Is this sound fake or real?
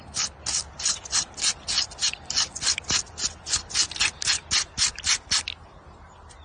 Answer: real